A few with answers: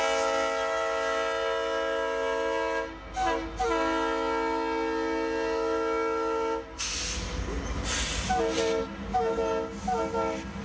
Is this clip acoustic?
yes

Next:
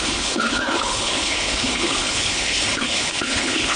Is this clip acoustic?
no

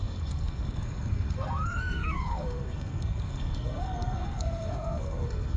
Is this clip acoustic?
no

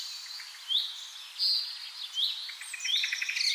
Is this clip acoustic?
yes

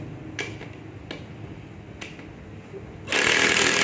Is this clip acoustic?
yes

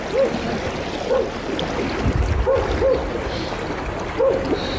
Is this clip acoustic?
yes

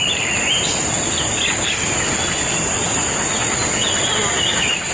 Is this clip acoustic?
yes